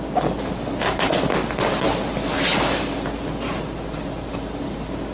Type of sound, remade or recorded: recorded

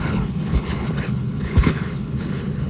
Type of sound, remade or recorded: remade